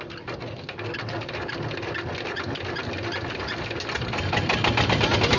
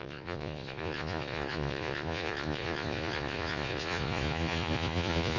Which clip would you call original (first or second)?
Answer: first